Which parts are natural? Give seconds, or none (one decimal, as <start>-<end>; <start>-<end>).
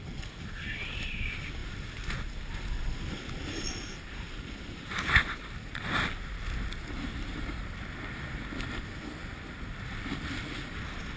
0.0-11.2